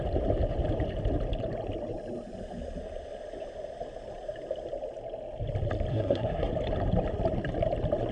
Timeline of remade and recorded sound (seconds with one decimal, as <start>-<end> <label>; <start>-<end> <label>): 0.0-5.9 recorded; 5.9-6.5 remade; 6.5-8.1 recorded